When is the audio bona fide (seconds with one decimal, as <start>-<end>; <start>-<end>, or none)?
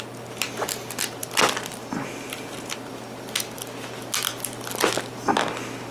0.0-5.9